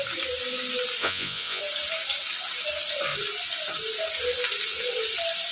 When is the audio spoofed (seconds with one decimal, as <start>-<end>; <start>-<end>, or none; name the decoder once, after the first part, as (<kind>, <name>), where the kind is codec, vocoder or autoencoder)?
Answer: 1.0-1.6 (vocoder, Vocos)